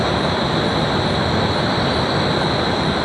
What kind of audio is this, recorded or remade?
recorded